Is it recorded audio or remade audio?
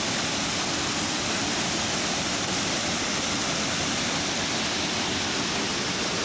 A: recorded